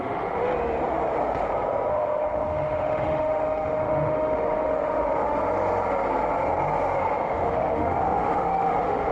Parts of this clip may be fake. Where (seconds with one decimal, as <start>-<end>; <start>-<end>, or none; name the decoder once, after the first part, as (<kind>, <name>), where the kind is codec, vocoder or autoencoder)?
0.0-0.5 (autoencoder, DAC-VAE); 1.9-5.4; 7.2-9.1